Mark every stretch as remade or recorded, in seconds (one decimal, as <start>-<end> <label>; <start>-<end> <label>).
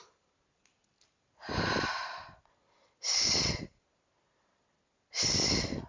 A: 0.0-5.9 recorded